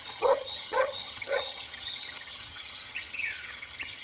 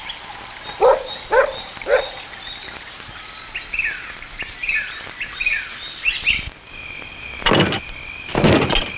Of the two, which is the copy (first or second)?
first